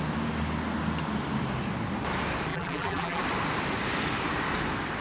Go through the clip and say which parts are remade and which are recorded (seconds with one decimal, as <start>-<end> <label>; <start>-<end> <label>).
0.0-2.5 recorded; 2.5-3.2 remade; 3.2-5.0 recorded